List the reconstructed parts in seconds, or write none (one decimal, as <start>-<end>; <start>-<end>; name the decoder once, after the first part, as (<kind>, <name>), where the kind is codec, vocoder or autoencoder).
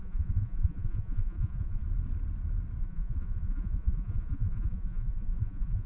0.0-1.8 (vocoder, Vocos); 2.8-5.9